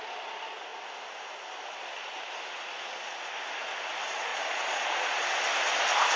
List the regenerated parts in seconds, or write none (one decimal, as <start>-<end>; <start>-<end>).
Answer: 4.3-5.1